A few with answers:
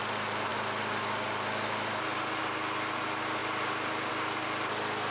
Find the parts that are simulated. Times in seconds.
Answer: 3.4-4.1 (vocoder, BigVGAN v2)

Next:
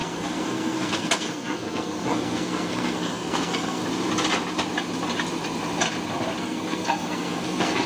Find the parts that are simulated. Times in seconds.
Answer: 0.0-3.8 (codec, SNAC); 6.4-7.9